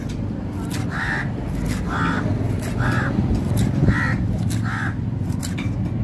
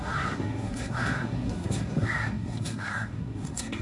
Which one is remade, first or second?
second